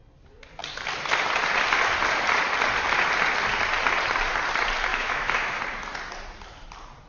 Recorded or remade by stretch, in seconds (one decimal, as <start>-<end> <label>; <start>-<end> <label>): 0.0-4.9 recorded; 4.9-5.6 remade; 5.6-7.1 recorded